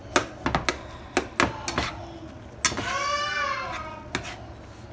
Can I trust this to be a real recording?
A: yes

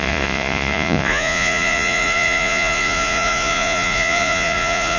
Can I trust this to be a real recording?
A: no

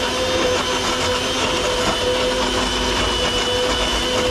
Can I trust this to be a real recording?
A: yes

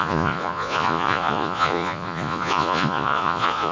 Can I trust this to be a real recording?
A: no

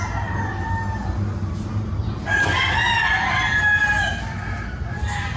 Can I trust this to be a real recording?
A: yes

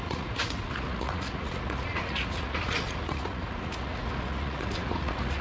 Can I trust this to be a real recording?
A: no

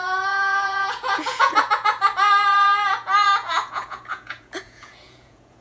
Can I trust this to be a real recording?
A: no